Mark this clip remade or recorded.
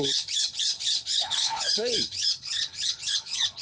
remade